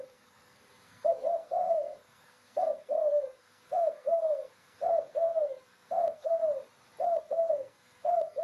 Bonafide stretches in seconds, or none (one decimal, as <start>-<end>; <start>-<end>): 6.4-7.2